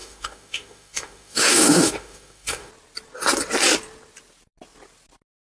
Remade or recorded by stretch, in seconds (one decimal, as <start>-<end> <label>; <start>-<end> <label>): 0.0-2.7 remade; 2.7-5.5 recorded